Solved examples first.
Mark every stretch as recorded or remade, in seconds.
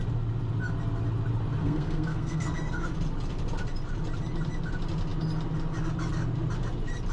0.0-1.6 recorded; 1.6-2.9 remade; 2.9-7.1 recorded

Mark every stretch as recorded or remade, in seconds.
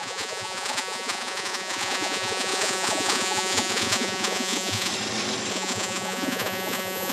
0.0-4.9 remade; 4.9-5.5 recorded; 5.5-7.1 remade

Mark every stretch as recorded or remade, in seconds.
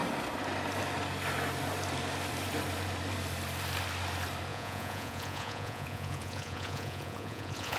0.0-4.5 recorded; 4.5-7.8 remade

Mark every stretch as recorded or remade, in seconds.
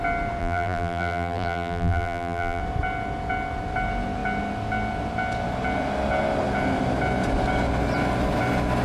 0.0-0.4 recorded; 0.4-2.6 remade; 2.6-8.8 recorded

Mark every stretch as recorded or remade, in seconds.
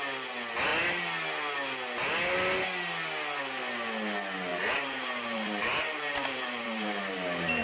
0.0-4.5 recorded; 4.5-7.6 remade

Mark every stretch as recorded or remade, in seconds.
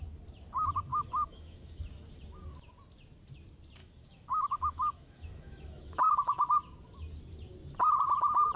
0.0-0.9 recorded; 0.9-1.8 remade; 1.8-3.8 recorded; 3.8-6.5 remade; 6.5-8.6 recorded